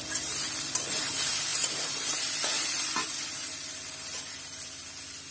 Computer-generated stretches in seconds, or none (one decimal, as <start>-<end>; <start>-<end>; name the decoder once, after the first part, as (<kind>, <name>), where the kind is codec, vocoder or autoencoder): 1.5-4.7 (vocoder, BigVGAN v2)